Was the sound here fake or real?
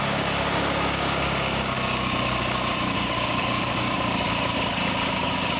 fake